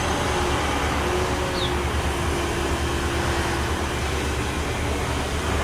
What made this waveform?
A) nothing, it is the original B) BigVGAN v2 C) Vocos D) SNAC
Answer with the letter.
A